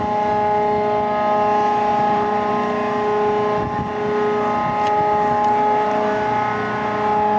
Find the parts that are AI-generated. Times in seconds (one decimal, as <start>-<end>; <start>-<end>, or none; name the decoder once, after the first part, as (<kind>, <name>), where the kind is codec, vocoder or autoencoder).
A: 1.9-2.5 (vocoder, BigVGAN v2)